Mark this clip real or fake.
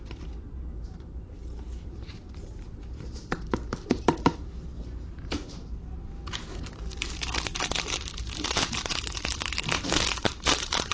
fake